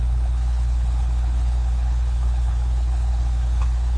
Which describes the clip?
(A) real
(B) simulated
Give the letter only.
B